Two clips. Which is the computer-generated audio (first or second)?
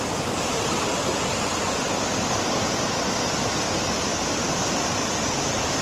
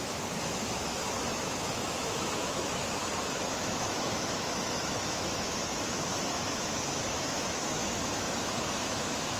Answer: second